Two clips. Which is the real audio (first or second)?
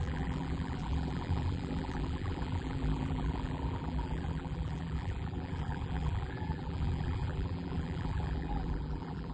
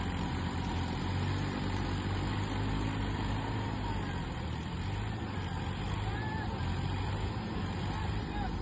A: second